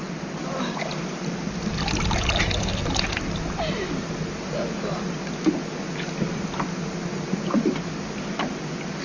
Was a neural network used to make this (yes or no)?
no